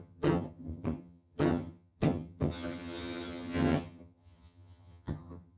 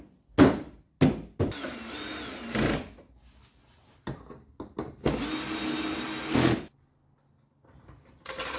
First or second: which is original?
second